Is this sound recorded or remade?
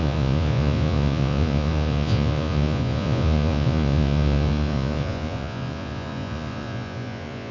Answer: remade